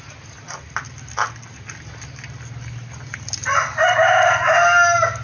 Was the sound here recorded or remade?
recorded